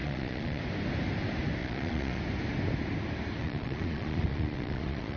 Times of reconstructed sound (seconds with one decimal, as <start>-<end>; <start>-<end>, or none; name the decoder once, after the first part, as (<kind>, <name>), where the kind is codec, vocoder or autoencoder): 0.0-0.6 (vocoder, Vocos); 1.6-2.2; 3.4-5.2